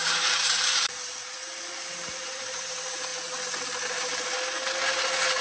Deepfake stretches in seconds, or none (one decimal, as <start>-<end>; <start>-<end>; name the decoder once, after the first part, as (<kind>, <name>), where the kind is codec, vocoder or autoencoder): 0.0-3.1 (vocoder, BigVGAN v2)